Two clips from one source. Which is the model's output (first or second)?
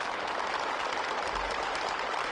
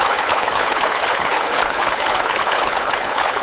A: second